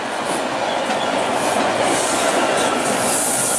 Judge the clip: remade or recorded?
remade